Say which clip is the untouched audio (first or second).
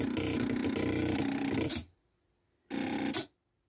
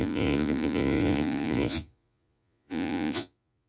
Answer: first